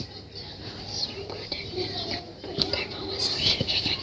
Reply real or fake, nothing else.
fake